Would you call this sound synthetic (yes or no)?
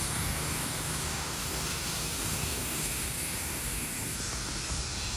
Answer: yes